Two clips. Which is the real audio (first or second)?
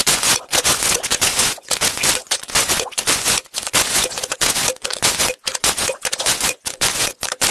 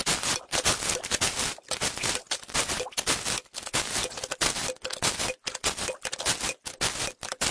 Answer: second